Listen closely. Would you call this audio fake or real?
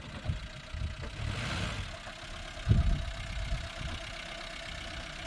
real